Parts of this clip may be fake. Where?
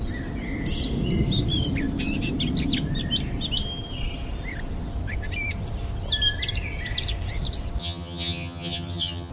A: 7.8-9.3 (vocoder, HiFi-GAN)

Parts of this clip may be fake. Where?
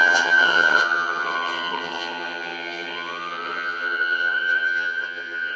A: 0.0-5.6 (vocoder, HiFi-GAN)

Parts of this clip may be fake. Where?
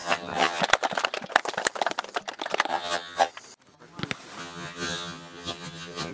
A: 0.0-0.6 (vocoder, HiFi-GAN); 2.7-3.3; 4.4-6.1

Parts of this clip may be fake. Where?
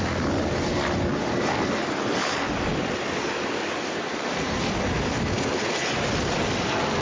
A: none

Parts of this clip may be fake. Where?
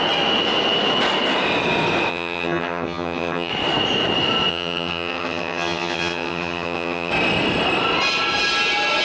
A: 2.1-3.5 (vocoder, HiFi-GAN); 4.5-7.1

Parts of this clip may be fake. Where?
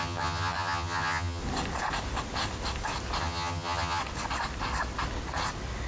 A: 0.0-1.4 (vocoder, HiFi-GAN); 3.2-4.0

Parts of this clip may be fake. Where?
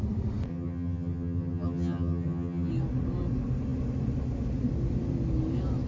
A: 0.5-2.7 (vocoder, HiFi-GAN)